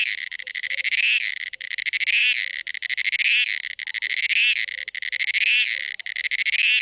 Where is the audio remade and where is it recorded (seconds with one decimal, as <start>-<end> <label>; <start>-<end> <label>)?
0.0-6.8 recorded

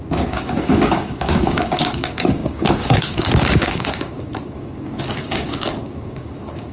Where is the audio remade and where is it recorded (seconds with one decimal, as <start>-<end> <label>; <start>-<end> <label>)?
0.0-6.7 remade

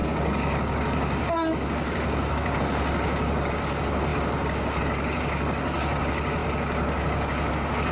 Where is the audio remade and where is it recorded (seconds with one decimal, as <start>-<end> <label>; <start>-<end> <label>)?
0.0-7.9 remade